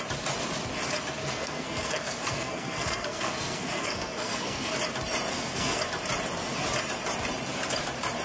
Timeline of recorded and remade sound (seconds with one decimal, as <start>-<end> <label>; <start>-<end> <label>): 0.0-1.2 recorded; 1.2-4.8 remade; 4.8-5.3 recorded; 5.3-5.8 remade; 5.8-8.2 recorded

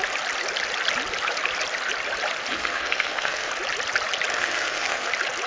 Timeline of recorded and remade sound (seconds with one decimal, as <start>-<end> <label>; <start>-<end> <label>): 0.0-2.5 recorded; 2.5-3.5 remade; 3.5-4.3 recorded; 4.3-5.1 remade; 5.1-5.5 recorded

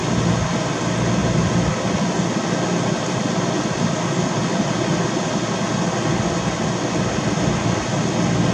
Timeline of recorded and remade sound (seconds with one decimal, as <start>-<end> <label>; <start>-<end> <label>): 0.0-8.5 recorded

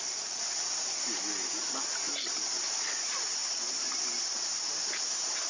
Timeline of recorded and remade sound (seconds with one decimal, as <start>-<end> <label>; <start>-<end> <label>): 0.0-5.5 recorded